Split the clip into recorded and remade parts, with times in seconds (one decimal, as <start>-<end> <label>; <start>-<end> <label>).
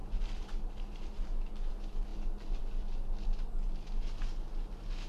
0.0-1.7 remade; 1.7-5.1 recorded